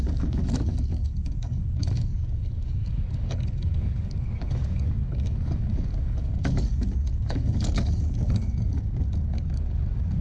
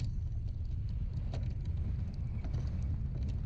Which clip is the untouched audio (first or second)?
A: second